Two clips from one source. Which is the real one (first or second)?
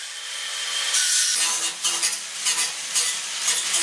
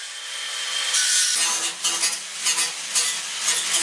second